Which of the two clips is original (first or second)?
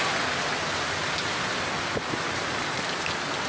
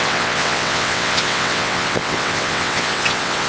first